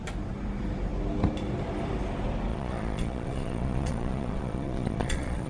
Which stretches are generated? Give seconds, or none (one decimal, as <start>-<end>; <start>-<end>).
2.5-5.5

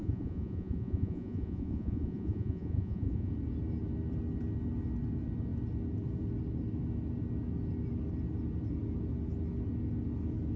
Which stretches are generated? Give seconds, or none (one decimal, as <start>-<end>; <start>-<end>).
0.0-3.3

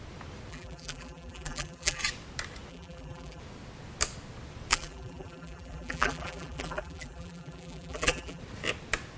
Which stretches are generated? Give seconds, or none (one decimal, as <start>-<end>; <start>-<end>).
0.5-2.0; 2.7-3.4; 4.7-8.4

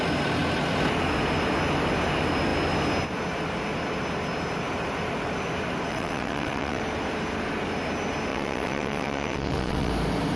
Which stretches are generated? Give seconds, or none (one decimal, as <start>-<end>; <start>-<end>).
5.9-6.8; 8.3-9.9

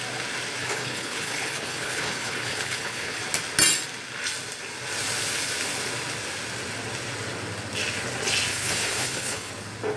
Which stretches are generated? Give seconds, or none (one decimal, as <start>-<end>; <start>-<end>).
0.6-3.2; 8.5-9.5

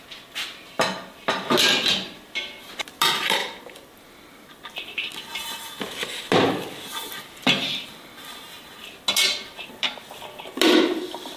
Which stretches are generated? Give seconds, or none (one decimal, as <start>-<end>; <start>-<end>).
3.4-5.1

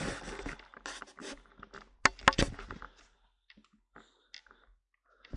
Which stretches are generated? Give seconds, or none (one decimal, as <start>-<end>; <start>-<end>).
none

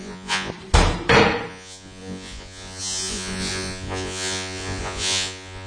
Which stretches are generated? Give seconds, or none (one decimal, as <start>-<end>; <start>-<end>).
0.0-0.5; 1.5-5.7